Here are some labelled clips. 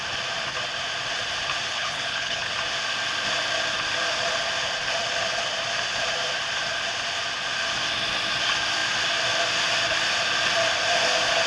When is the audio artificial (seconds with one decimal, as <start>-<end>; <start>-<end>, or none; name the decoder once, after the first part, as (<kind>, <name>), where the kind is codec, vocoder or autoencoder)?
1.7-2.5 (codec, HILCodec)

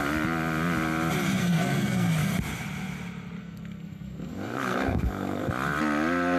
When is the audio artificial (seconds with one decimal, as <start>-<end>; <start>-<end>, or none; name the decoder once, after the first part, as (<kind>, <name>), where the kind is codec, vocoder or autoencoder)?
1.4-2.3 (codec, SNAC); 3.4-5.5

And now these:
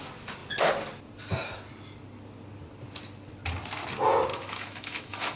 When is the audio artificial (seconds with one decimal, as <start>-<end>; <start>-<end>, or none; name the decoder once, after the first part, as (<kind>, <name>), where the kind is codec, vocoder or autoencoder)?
4.3-5.4 (autoencoder, DAC-VAE)

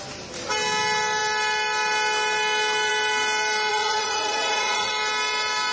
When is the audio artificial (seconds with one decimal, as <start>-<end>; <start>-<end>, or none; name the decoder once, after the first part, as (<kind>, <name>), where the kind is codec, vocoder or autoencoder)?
3.7-4.9 (vocoder, Vocos)

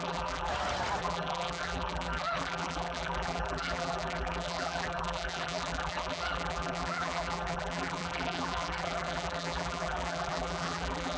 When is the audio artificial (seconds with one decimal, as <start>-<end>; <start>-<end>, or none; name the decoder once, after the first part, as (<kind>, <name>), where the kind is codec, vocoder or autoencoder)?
0.0-0.5 (vocoder, BigVGAN v2); 1.0-11.2

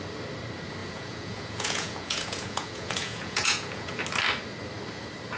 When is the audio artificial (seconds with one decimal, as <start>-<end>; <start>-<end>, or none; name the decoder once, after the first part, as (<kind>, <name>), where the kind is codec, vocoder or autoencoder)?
0.8-4.0 (vocoder, Vocos)

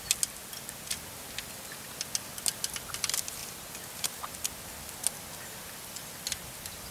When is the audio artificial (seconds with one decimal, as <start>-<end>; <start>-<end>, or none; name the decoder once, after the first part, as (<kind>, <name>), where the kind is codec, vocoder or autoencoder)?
none